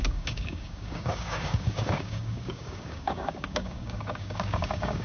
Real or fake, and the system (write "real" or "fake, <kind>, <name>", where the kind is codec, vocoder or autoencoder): fake, codec, DAC